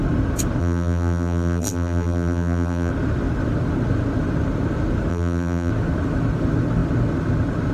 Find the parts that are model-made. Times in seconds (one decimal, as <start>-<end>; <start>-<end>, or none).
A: 0.6-2.9; 5.1-5.7